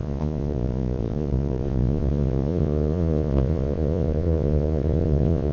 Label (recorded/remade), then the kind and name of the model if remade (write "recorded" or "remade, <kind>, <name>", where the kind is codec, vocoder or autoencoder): remade, vocoder, Vocos